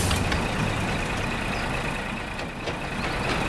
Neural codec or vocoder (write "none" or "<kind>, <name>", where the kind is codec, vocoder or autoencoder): none